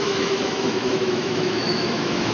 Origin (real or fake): fake